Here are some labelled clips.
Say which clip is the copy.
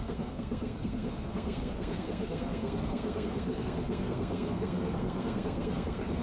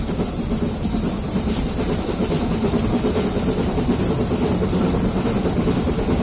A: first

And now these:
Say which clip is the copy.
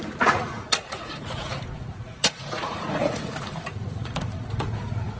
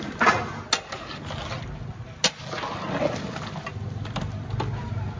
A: first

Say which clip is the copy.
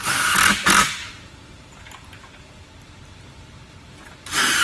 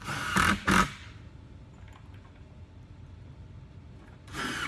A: first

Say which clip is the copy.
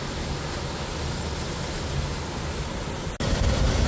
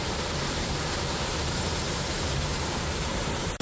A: second